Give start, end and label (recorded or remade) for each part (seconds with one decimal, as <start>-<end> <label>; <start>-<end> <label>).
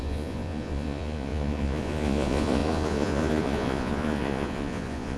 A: 0.0-5.2 remade